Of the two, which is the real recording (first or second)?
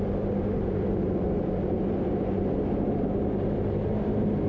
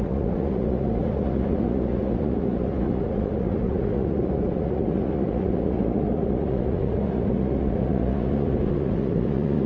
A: first